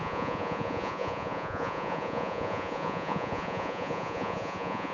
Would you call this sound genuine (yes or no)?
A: no